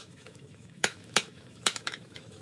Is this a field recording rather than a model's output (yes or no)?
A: no